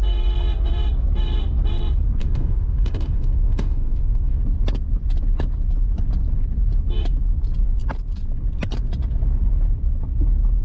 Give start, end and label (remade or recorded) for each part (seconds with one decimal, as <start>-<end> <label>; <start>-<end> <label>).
0.0-2.2 recorded; 2.2-4.4 remade; 4.4-10.6 recorded